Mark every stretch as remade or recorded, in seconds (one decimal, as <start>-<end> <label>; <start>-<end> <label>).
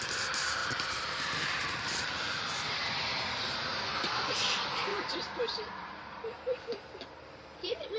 0.0-8.0 remade